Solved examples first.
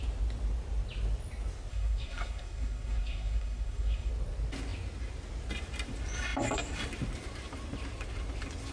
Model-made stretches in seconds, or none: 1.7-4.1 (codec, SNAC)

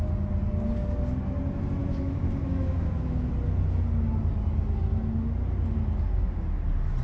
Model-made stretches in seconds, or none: 1.8-3.3 (autoencoder, DAC-VAE)

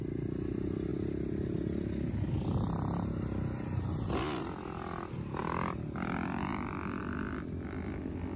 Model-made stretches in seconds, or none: none

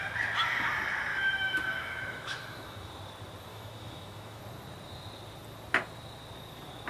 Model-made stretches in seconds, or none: 1.1-2.9 (autoencoder, DAC-VAE); 3.5-4.4

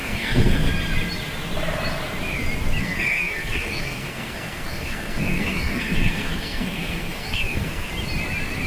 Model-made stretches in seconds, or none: 0.0-0.7 (codec, SNAC); 2.8-7.9

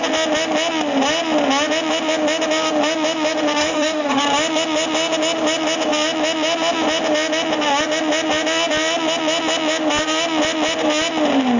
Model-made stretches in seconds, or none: 3.6-4.2 (codec, DAC)